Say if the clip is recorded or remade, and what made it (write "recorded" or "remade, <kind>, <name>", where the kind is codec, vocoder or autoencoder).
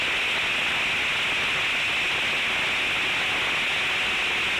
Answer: recorded